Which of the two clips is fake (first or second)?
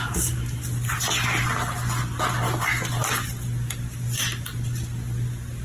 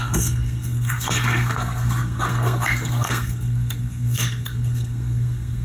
second